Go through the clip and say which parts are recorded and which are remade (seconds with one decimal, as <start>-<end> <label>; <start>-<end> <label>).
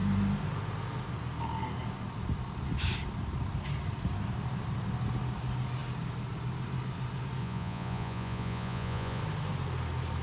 0.0-7.4 recorded; 7.4-9.2 remade; 9.2-10.2 recorded